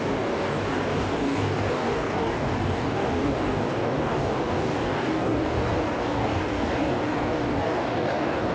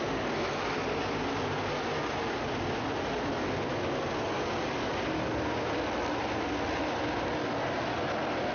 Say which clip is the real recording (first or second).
second